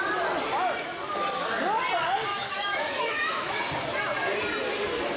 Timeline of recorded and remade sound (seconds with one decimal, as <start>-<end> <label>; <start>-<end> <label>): 0.0-2.3 recorded; 2.3-3.6 remade; 3.6-5.2 recorded